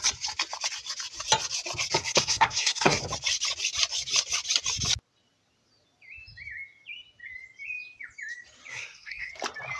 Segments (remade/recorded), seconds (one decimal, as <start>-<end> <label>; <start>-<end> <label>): 0.0-2.0 recorded; 2.0-3.0 remade; 3.0-8.7 recorded; 8.7-9.3 remade; 9.3-9.8 recorded